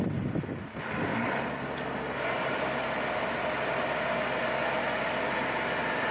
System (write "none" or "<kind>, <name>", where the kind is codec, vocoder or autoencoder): none